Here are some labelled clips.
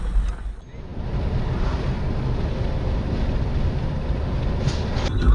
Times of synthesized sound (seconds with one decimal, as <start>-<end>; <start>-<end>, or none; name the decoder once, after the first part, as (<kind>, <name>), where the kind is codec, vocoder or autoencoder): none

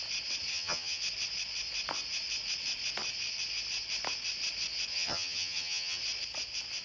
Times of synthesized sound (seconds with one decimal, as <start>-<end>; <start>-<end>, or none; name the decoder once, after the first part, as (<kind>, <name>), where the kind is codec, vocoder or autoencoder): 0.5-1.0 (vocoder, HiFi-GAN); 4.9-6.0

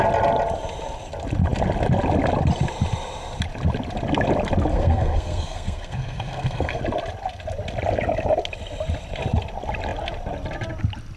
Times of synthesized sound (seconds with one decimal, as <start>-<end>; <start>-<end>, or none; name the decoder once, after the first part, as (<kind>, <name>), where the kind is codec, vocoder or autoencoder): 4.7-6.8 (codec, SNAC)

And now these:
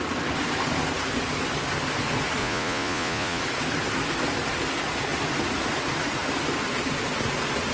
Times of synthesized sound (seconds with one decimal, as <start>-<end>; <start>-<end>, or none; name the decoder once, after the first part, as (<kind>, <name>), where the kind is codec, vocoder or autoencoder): 2.4-3.4 (vocoder, Vocos)

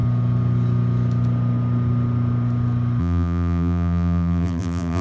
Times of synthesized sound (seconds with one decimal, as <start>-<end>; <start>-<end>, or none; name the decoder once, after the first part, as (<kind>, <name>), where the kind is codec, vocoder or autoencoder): 3.0-5.0 (vocoder, BigVGAN v2)

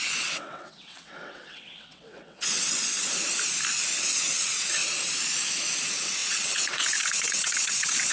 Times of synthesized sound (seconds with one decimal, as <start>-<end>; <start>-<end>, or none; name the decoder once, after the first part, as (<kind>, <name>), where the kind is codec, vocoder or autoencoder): 0.0-3.1 (vocoder, WaveNeXt); 4.1-4.8; 5.8-8.1

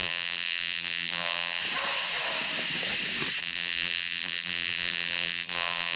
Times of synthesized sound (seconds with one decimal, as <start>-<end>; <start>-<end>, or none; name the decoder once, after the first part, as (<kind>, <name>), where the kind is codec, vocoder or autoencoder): 0.0-1.6 (vocoder, BigVGAN v2); 3.4-6.0